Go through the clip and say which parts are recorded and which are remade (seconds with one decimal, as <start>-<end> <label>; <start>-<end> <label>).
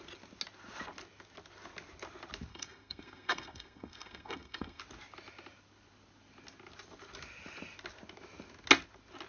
0.0-2.5 recorded; 2.5-4.8 remade; 4.8-9.3 recorded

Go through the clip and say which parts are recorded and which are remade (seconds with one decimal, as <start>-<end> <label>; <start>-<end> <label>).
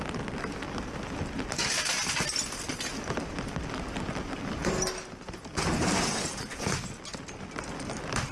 0.0-8.3 recorded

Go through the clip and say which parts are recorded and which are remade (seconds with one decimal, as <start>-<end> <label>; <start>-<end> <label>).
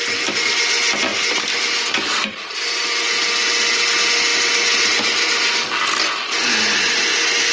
0.0-7.5 recorded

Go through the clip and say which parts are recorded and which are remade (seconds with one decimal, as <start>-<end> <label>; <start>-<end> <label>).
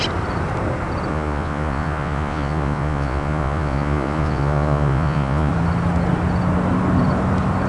0.0-1.1 recorded; 1.1-5.5 remade; 5.5-7.7 recorded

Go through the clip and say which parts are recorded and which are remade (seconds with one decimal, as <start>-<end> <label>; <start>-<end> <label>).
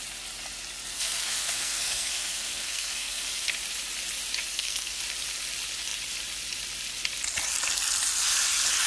0.0-0.9 recorded; 0.9-3.5 remade; 3.5-4.5 recorded; 4.5-5.0 remade; 5.0-8.9 recorded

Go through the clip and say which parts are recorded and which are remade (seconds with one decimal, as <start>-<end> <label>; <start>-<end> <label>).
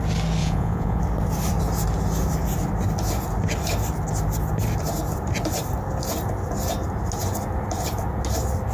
0.0-0.4 recorded; 0.4-1.0 remade; 1.0-8.7 recorded